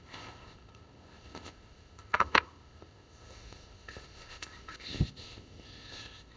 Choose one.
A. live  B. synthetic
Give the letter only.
B